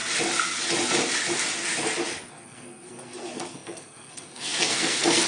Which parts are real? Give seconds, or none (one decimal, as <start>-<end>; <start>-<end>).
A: 0.0-2.3